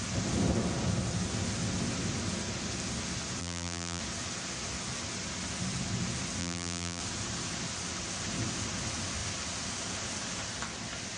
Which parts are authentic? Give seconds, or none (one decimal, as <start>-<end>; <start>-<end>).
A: 0.0-3.4; 4.0-6.4; 7.0-11.2